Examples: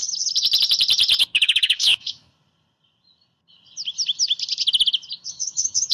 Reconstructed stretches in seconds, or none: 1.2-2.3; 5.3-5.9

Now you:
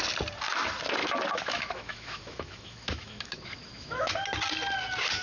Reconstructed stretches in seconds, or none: 1.0-4.1

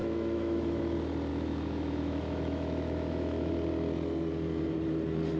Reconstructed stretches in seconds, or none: 0.0-0.8; 1.3-3.5

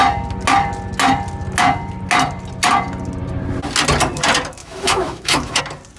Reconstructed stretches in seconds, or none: 4.6-5.6

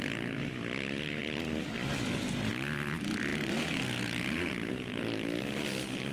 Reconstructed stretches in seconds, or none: none

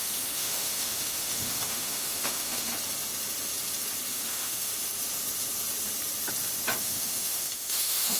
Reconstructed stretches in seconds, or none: 0.0-2.7; 4.1-4.7; 6.8-8.2

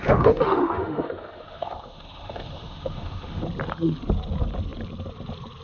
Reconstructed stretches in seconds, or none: 0.0-3.4

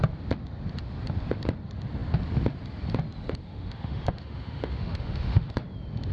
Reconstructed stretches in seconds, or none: 3.5-5.5